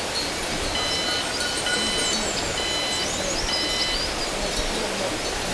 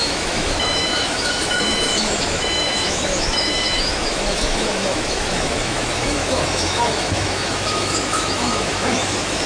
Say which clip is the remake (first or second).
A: second